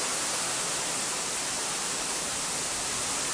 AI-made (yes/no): yes